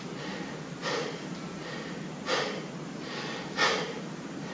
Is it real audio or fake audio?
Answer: real